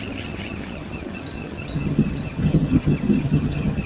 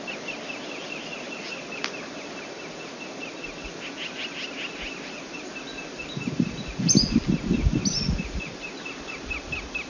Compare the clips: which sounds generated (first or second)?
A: first